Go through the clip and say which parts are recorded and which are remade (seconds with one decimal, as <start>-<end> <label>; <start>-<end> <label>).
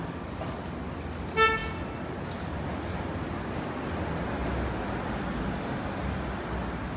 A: 0.0-7.0 recorded